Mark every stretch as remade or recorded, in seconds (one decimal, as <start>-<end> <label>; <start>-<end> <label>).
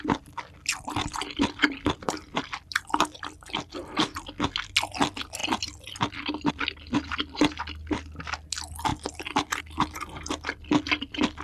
0.0-0.7 recorded; 0.7-2.4 remade; 2.4-11.4 recorded